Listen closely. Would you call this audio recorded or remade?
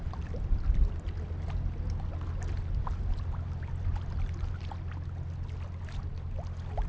recorded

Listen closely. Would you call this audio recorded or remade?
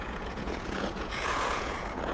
remade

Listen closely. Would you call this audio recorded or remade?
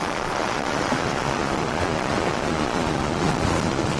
remade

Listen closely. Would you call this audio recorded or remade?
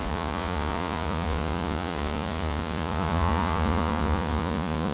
remade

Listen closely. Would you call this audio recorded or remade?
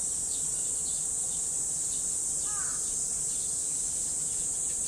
recorded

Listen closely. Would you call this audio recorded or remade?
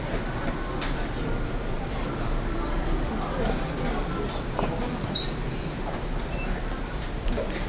recorded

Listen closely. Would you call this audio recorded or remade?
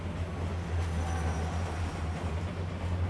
recorded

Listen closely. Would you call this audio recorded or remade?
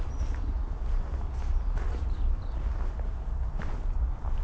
recorded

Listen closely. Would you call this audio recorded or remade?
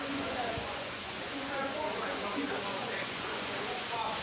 remade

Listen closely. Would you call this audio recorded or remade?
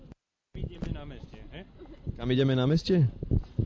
recorded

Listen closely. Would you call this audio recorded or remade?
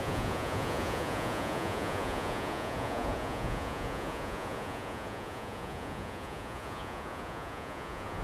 remade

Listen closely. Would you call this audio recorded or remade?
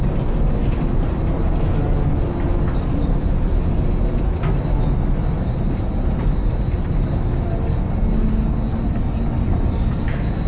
recorded